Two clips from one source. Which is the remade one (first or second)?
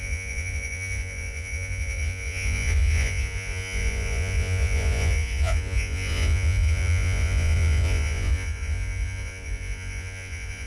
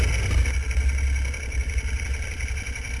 first